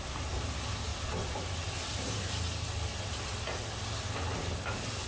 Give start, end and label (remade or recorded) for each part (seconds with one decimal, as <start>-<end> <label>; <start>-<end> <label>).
0.0-5.1 recorded